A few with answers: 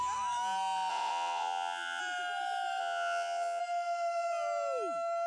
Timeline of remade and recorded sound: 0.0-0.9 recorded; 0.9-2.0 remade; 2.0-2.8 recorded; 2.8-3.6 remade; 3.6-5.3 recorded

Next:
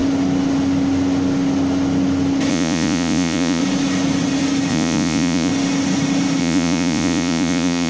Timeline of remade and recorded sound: 0.0-2.5 recorded; 2.5-3.6 remade; 3.6-4.7 recorded; 4.7-5.5 remade; 5.5-6.4 recorded; 6.4-7.9 remade